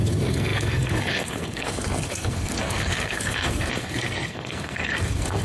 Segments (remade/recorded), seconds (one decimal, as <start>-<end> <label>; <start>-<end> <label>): 0.0-5.4 remade